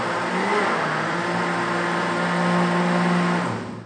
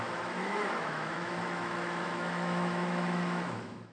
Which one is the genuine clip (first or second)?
first